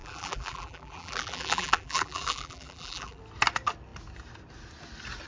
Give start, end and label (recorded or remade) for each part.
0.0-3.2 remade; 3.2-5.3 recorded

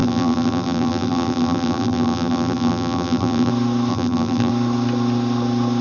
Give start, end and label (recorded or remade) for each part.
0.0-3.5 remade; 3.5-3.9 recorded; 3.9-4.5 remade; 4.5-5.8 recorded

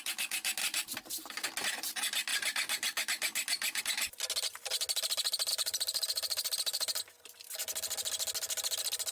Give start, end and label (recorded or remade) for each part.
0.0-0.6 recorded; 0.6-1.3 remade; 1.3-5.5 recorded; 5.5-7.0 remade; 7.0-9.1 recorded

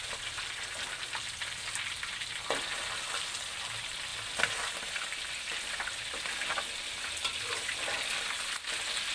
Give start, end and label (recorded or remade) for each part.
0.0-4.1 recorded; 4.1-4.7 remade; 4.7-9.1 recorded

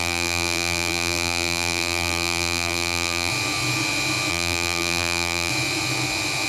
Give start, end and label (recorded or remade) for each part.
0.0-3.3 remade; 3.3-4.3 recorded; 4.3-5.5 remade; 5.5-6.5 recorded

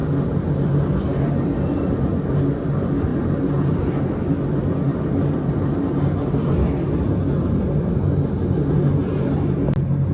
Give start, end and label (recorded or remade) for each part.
0.0-10.1 recorded

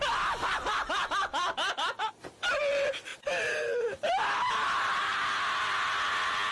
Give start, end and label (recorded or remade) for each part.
0.0-6.5 recorded